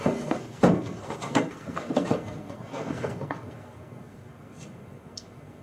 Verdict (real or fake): fake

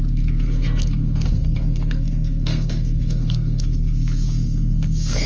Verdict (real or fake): fake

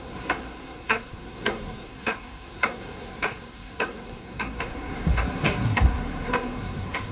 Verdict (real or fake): fake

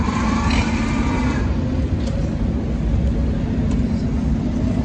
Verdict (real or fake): real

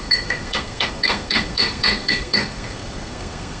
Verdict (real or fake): fake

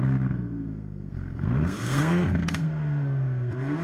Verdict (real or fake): fake